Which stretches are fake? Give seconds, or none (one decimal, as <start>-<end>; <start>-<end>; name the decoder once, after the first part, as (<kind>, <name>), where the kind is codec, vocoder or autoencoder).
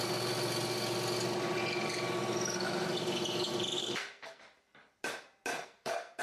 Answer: 3.8-4.4 (codec, SNAC); 5.5-6.2